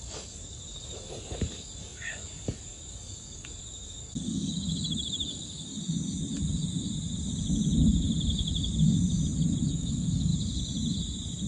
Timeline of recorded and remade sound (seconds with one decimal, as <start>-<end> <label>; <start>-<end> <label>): 0.0-5.7 remade; 5.7-9.7 recorded; 9.7-10.3 remade; 10.3-11.5 recorded